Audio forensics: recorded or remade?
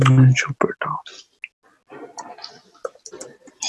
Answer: recorded